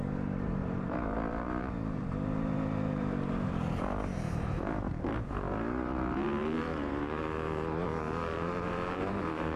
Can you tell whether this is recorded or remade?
remade